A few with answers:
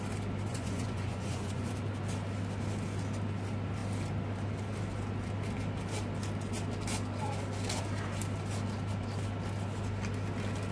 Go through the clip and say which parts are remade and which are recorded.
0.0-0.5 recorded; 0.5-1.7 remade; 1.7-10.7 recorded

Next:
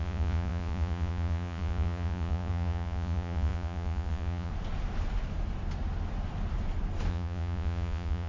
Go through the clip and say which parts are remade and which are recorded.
0.0-4.5 remade; 4.5-7.1 recorded; 7.1-8.3 remade